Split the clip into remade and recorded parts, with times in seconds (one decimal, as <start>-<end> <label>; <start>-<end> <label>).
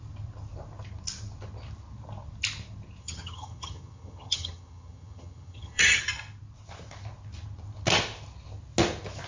0.0-3.0 recorded; 3.0-6.0 remade; 6.0-9.3 recorded